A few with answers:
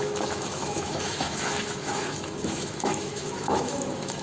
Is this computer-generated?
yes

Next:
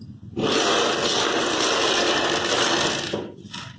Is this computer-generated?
no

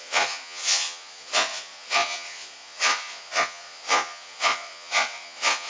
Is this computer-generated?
yes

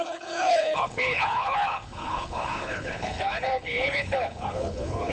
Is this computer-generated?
yes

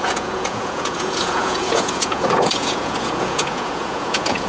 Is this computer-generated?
yes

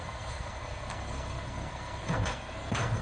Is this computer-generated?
yes